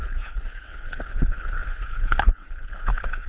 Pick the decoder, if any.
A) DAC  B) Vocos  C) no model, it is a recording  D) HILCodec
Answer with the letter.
D